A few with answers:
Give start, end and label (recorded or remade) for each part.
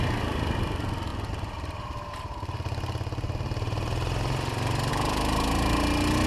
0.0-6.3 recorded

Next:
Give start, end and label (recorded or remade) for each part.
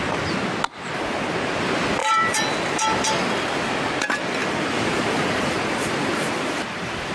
0.0-2.0 recorded; 2.0-2.7 remade; 2.7-4.4 recorded; 4.4-7.1 remade